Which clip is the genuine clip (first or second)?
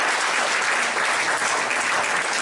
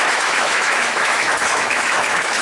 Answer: first